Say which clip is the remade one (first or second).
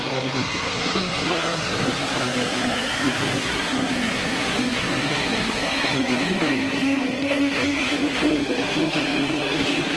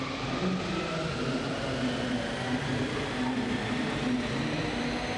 first